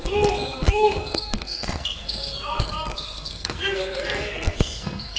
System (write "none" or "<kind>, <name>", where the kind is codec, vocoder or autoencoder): codec, SNAC